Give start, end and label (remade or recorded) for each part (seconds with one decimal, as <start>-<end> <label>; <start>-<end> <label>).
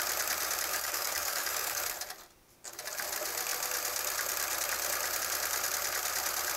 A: 0.0-0.7 recorded; 0.7-1.8 remade; 1.8-6.6 recorded